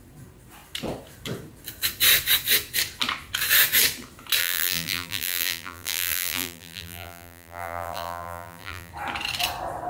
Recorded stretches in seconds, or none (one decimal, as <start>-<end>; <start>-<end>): 0.0-4.4; 8.9-9.9